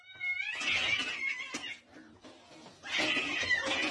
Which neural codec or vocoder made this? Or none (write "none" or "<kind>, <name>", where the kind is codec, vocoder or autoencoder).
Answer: none